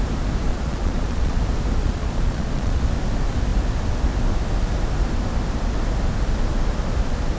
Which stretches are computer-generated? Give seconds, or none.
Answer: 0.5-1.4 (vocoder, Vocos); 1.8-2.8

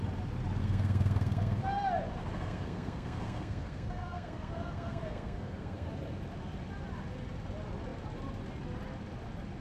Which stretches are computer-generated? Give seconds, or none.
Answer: 0.6-1.6 (codec, SNAC); 2.2-5.9

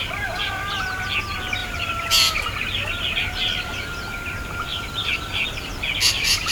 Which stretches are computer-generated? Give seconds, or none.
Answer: 1.6-2.1 (vocoder, BigVGAN v2); 4.7-5.7

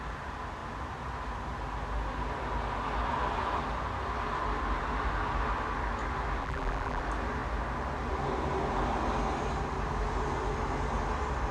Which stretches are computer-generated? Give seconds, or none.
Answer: 6.4-7.0 (vocoder, BigVGAN v2)

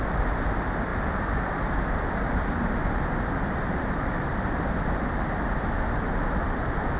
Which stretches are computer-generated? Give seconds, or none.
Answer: none

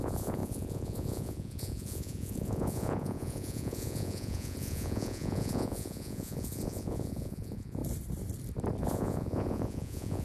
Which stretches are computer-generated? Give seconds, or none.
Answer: 0.0-7.8 (vocoder, Vocos); 8.8-10.2

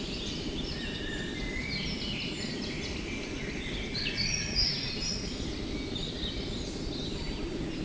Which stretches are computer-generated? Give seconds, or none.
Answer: 3.9-5.1 (vocoder, Vocos)

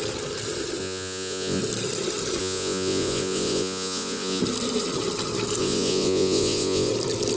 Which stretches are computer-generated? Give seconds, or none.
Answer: 0.8-1.6 (vocoder, Vocos); 2.4-4.4; 5.6-6.9